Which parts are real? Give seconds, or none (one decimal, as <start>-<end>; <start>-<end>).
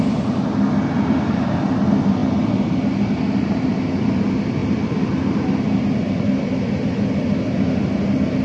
0.0-8.4